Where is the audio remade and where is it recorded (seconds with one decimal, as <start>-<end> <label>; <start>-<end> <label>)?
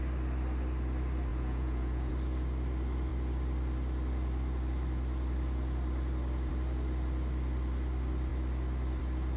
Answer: 0.0-1.3 recorded; 1.3-2.1 remade; 2.1-9.4 recorded